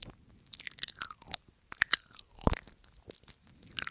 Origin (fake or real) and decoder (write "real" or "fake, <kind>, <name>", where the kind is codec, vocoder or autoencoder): real